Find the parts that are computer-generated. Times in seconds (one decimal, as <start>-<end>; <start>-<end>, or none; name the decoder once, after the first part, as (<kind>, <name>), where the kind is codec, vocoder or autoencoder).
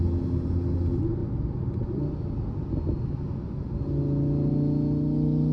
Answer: none